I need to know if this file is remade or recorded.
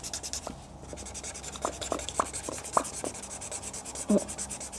recorded